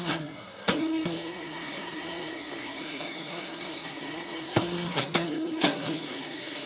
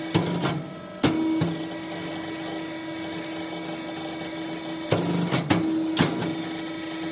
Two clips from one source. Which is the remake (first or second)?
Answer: first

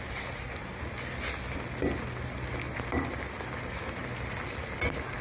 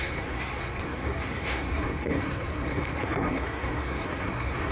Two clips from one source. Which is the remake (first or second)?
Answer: second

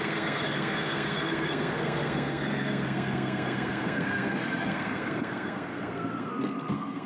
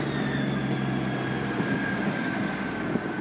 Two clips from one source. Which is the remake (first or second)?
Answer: first